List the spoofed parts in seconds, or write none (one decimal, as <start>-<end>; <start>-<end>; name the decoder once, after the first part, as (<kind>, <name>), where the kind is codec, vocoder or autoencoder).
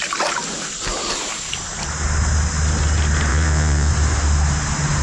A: 3.3-3.9 (vocoder, Vocos)